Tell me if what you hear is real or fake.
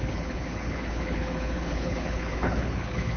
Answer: fake